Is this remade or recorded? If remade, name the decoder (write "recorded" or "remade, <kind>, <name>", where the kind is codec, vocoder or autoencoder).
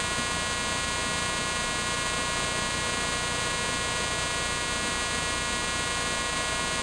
recorded